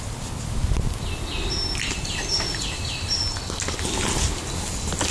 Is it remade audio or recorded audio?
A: recorded